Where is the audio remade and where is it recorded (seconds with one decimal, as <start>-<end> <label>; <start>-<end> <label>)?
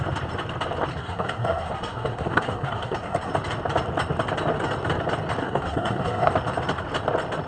0.0-0.9 recorded; 0.9-3.3 remade; 3.3-5.4 recorded; 5.4-6.3 remade; 6.3-7.5 recorded